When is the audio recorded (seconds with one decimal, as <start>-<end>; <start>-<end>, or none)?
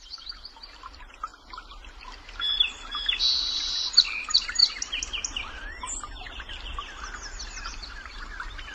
1.3-3.4; 6.7-7.7